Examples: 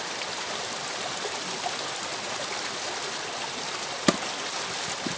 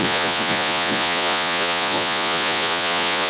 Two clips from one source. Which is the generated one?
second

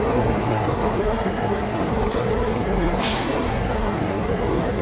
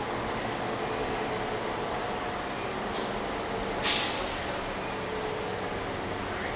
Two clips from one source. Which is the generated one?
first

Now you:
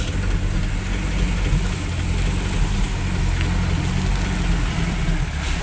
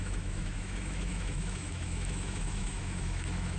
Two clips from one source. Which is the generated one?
second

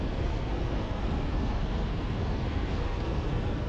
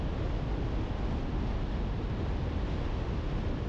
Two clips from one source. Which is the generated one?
first